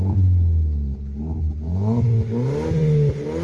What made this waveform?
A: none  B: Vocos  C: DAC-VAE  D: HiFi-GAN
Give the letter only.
A